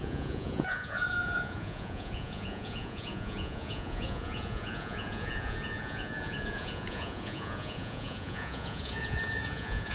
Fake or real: fake